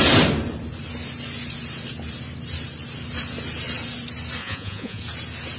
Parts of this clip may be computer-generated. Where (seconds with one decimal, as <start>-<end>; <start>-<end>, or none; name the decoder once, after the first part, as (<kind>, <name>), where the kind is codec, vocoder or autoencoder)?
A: 4.4-5.0 (vocoder, Vocos)

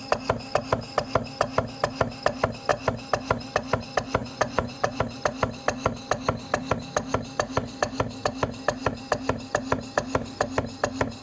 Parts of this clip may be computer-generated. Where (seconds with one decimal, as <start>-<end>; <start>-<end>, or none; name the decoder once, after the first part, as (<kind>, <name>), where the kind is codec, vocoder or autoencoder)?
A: 4.2-5.0 (vocoder, Vocos)

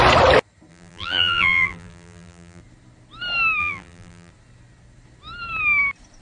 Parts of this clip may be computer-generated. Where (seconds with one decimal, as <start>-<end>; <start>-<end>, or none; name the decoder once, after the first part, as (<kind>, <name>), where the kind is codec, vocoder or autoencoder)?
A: 0.7-2.6 (vocoder, BigVGAN v2); 3.6-4.3

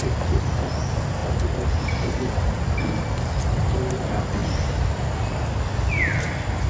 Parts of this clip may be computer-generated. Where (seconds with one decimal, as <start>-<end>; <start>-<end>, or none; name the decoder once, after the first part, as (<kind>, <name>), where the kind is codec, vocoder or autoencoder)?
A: none

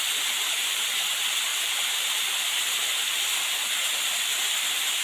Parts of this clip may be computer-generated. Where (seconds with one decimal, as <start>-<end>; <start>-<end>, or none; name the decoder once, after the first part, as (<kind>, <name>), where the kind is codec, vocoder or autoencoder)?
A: 0.0-2.9 (vocoder, BigVGAN v2); 4.1-5.0

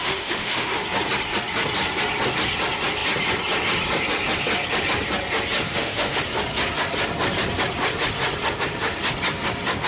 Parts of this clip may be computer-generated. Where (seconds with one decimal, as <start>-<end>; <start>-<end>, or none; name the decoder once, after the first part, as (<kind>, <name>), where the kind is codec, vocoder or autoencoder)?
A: 0.0-0.8 (autoencoder, DAC-VAE); 5.7-6.2